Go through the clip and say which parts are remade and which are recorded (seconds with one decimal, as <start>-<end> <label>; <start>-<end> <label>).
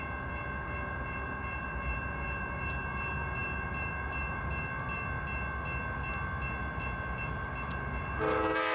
0.0-8.7 recorded